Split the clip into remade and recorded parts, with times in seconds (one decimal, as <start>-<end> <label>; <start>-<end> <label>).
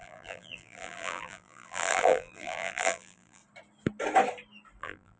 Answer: 0.0-3.4 remade; 3.4-4.8 recorded; 4.8-5.2 remade